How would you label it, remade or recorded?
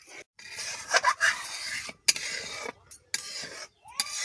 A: recorded